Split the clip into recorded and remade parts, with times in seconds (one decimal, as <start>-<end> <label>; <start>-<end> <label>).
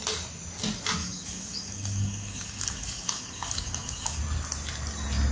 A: 0.0-1.0 recorded; 1.0-4.2 remade; 4.2-5.3 recorded